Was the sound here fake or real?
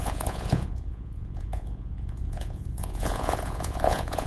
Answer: fake